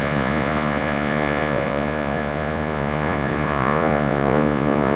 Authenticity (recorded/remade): remade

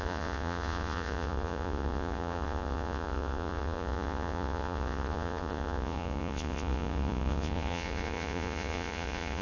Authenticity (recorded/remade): remade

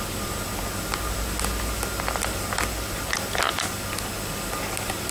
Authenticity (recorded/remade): recorded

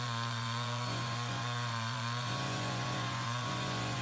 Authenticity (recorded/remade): remade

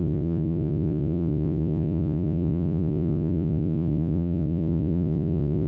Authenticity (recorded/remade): remade